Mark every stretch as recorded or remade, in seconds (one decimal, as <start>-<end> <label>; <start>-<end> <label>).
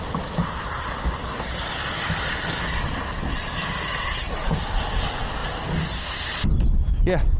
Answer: 0.0-5.4 remade; 5.4-7.4 recorded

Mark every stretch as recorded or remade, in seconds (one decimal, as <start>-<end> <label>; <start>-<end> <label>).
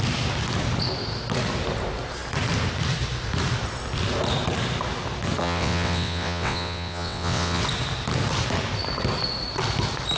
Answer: 0.0-5.4 recorded; 5.4-7.6 remade; 7.6-10.2 recorded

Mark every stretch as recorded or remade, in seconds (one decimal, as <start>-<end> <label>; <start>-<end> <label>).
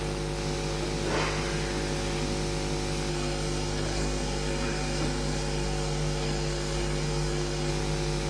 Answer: 0.0-3.1 recorded; 3.1-7.7 remade; 7.7-8.3 recorded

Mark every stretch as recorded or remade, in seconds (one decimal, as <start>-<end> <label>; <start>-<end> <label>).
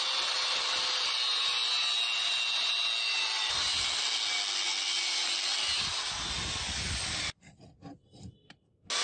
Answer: 0.0-9.0 recorded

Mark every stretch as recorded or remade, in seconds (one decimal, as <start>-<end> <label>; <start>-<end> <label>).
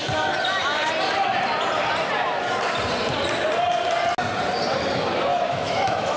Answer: 0.0-5.3 recorded; 5.3-6.2 remade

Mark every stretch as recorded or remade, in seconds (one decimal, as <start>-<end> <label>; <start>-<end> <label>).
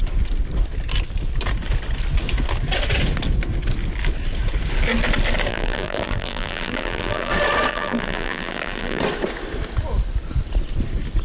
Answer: 0.0-5.5 recorded; 5.5-7.3 remade; 7.3-7.7 recorded; 7.7-9.0 remade; 9.0-11.2 recorded